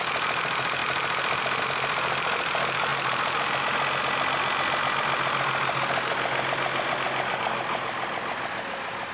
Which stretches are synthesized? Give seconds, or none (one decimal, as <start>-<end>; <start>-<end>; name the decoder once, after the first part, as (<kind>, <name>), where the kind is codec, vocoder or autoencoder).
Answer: none